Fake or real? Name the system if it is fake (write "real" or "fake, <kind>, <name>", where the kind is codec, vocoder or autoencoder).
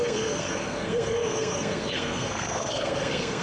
fake, codec, SNAC